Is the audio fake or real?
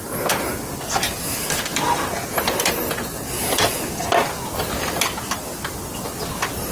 real